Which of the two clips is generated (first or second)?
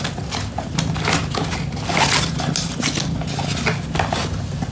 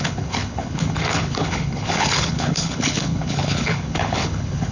second